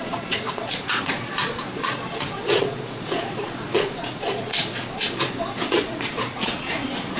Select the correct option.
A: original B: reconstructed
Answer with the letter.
B